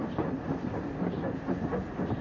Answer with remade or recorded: recorded